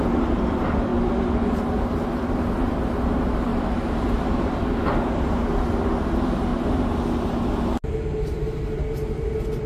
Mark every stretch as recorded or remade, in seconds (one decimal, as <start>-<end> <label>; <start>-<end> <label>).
0.0-3.5 recorded; 3.5-4.2 remade; 4.2-9.7 recorded